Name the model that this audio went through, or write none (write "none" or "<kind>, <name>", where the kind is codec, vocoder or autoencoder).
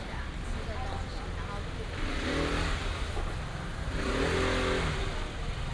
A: none